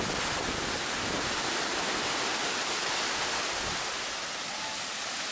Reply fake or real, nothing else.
real